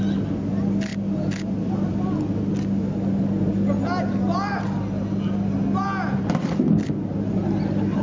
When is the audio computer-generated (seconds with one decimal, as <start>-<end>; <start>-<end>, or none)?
none